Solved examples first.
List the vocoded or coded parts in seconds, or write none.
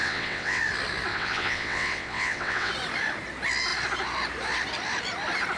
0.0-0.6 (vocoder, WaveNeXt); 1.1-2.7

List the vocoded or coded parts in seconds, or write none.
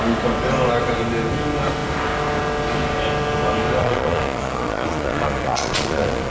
3.8-6.3 (vocoder, Vocos)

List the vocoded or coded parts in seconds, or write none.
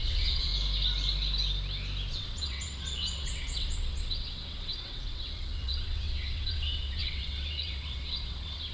0.0-0.5 (vocoder, WaveNeXt); 2.1-8.7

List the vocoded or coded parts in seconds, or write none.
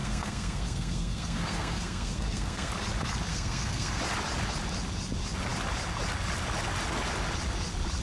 0.0-2.7 (codec, SNAC); 3.3-4.0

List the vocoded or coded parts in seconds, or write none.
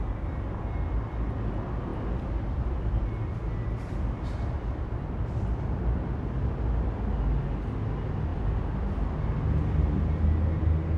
1.9-6.9 (vocoder, BigVGAN v2); 8.3-10.2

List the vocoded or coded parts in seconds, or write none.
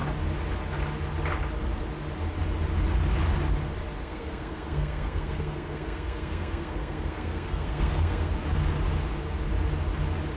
4.0-8.3 (codec, SNAC)